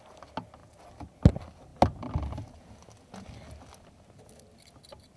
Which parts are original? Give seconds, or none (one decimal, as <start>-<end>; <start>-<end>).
0.0-5.2